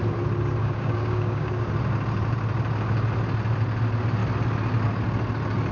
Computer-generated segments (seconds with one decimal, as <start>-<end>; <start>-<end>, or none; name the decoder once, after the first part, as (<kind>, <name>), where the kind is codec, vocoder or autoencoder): 0.6-1.7 (codec, DAC)